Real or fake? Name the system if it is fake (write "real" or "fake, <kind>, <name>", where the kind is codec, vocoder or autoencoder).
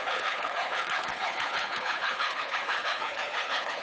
fake, codec, HILCodec